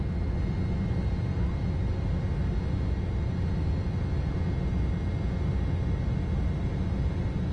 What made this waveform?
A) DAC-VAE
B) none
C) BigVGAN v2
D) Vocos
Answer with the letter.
B